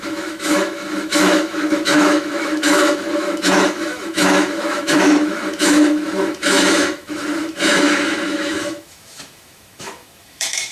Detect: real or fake fake